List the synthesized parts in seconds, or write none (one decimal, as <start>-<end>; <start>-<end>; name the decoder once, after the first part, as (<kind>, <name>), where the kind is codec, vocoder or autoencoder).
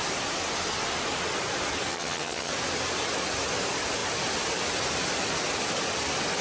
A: 1.9-2.5 (vocoder, HiFi-GAN)